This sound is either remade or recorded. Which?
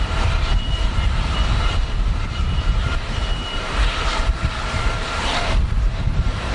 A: remade